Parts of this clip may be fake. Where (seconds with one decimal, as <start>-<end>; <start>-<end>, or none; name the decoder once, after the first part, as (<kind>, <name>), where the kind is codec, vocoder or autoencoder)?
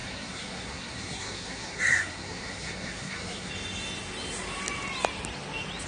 0.0-3.5 (codec, SNAC)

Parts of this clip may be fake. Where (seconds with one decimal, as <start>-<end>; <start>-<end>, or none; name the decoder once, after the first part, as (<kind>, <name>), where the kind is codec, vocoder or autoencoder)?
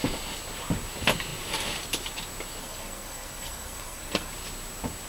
2.6-4.3 (codec, SNAC)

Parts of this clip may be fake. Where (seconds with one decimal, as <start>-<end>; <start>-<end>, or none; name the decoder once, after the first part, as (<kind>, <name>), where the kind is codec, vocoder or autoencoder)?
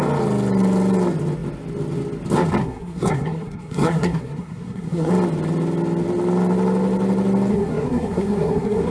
2.6-5.1 (codec, SNAC); 7.5-8.9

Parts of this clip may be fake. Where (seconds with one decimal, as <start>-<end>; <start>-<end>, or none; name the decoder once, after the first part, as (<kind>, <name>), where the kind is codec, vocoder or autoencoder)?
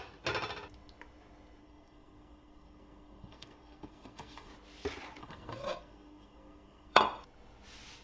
1.6-4.5 (codec, SNAC); 5.2-7.0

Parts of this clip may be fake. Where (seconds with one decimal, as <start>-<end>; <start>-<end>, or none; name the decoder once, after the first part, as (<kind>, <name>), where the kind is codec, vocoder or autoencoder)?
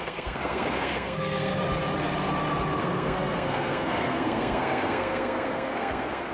0.0-1.5 (codec, SNAC); 2.8-6.3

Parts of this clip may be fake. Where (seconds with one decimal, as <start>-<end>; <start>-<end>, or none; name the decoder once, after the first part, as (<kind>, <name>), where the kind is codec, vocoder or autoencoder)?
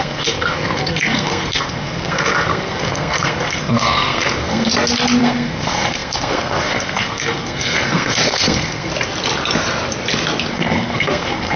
0.0-4.7 (codec, SNAC); 5.2-8.9; 10.5-11.6